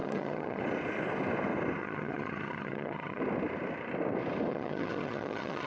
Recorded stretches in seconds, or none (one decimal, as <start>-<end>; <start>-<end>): 0.6-1.8; 3.2-4.5